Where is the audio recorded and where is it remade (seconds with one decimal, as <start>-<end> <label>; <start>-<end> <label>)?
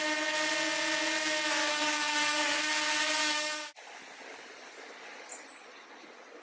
0.0-1.6 recorded; 1.6-2.6 remade; 2.6-3.2 recorded; 3.2-3.7 remade; 3.7-6.4 recorded